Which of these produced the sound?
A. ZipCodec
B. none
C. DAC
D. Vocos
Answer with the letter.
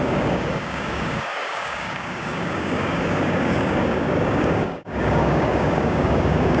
C